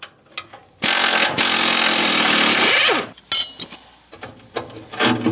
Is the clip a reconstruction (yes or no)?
no